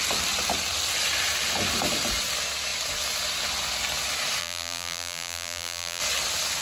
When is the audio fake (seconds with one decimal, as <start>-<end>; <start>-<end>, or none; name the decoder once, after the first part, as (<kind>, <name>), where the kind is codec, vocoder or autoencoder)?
4.4-6.0 (vocoder, BigVGAN v2)